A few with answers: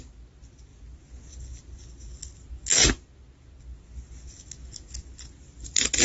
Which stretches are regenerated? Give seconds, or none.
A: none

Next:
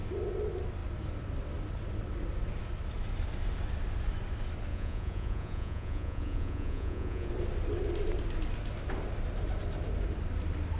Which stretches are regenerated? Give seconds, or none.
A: 4.7-7.3 (vocoder, Vocos)

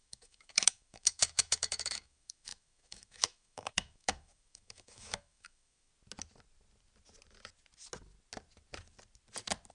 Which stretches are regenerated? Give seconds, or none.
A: 0.0-5.9 (autoencoder, DAC-VAE)

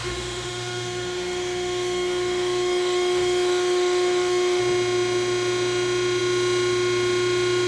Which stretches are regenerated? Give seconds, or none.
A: 0.0-4.6 (autoencoder, DAC-VAE)

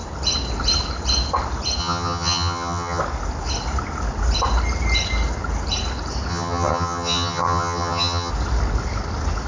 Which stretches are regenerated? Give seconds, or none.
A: 1.8-3.0 (vocoder, HiFi-GAN); 6.3-8.3

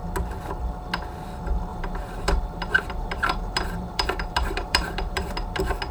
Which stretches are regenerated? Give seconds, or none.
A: 1.7-5.2 (vocoder, BigVGAN v2)

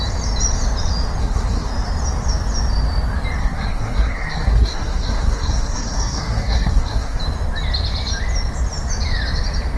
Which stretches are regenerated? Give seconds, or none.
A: 1.2-1.7 (codec, SNAC); 3.4-7.2

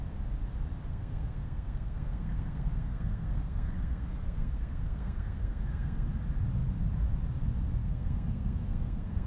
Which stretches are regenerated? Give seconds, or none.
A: 0.9-6.1 (codec, SNAC); 7.8-9.3